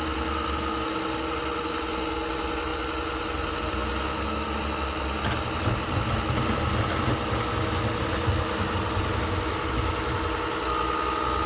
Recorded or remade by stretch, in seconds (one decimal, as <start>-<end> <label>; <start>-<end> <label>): 0.0-11.5 recorded